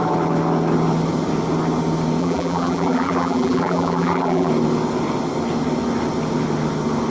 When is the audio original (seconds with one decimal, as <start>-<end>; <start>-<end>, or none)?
0.0-2.2; 4.5-7.1